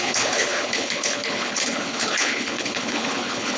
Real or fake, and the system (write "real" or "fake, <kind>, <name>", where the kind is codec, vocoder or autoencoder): fake, codec, HILCodec